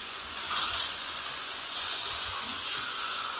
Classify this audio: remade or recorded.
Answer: remade